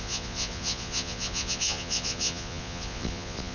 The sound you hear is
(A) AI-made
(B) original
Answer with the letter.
A